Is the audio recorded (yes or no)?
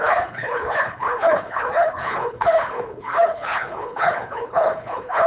no